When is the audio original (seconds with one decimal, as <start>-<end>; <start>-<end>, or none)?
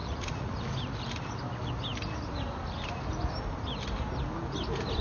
0.6-5.0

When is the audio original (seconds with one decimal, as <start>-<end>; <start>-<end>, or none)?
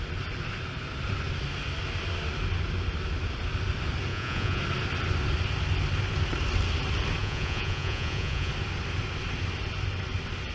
0.0-4.1; 4.6-7.2; 8.5-10.5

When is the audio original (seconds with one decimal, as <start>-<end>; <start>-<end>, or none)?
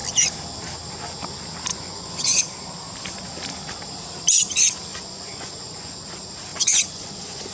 0.0-1.7; 2.4-4.9; 5.9-6.5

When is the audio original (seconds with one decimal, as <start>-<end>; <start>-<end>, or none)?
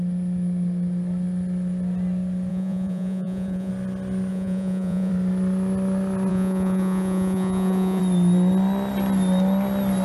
0.0-2.5; 3.7-4.3; 5.1-6.3; 8.0-10.0